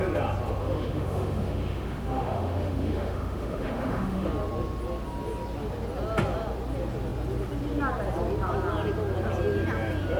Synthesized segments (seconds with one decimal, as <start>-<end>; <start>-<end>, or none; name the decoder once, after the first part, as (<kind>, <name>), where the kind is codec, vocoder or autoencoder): 0.6-4.3 (autoencoder, DAC-VAE)